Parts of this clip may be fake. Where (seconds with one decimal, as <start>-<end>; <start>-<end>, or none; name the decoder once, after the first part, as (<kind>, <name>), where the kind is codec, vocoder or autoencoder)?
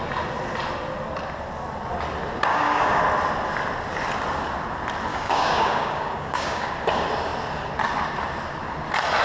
2.5-3.0 (codec, DAC); 5.1-6.7